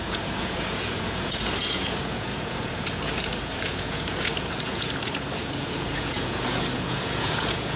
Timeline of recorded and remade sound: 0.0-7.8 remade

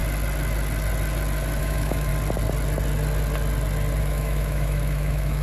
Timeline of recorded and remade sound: 0.0-1.6 recorded; 1.6-2.1 remade; 2.1-4.0 recorded; 4.0-5.4 remade

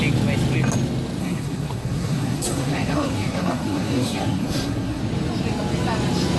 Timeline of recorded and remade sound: 0.0-1.2 recorded; 1.2-5.0 remade; 5.0-6.4 recorded

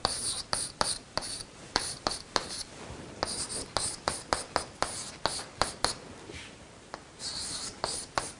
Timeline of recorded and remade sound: 0.0-2.6 remade; 2.6-7.4 recorded; 7.4-8.4 remade